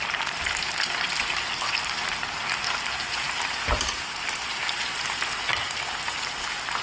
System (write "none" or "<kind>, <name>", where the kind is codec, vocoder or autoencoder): none